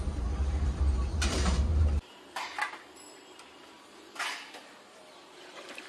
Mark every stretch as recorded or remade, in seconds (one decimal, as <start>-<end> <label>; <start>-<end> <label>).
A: 0.0-2.5 remade; 2.5-5.5 recorded; 5.5-5.9 remade